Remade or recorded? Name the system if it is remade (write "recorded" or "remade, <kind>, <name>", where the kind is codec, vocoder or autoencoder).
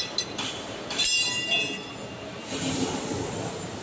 recorded